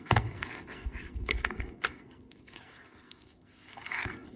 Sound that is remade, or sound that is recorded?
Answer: remade